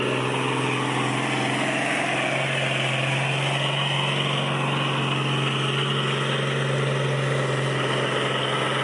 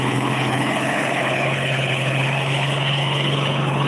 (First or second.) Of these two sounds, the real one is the first